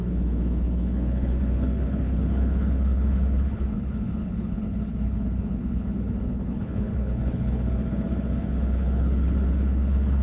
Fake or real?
fake